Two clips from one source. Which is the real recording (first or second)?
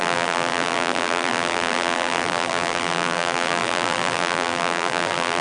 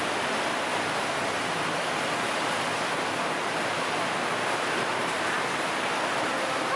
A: second